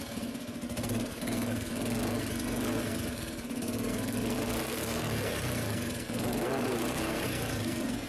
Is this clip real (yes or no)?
no